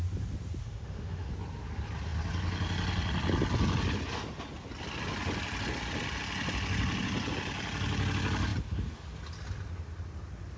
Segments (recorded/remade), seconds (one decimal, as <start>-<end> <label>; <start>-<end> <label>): 0.0-0.6 recorded; 0.6-1.3 remade; 1.3-10.6 recorded